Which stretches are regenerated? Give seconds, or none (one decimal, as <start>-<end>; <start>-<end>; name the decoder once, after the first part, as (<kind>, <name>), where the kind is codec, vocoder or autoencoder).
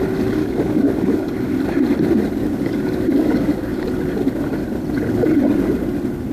0.4-1.5 (codec, DAC); 2.4-3.9